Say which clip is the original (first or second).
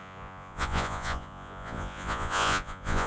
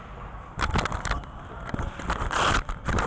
second